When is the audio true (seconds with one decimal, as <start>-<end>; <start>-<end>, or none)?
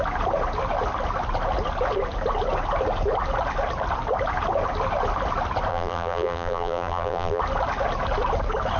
0.0-5.7; 7.4-8.8